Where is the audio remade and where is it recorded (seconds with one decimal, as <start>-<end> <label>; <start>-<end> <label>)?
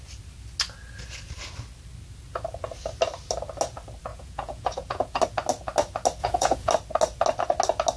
0.0-4.1 recorded; 4.1-5.2 remade; 5.2-6.2 recorded; 6.2-6.7 remade; 6.7-8.0 recorded